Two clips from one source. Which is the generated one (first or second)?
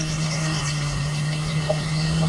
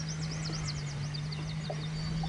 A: first